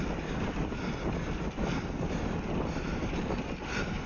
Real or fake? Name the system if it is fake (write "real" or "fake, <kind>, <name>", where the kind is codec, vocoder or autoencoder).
real